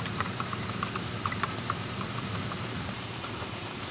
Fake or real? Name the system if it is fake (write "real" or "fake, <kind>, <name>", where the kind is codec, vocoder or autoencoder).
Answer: fake, vocoder, BigVGAN v2